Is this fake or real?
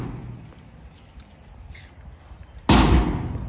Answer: real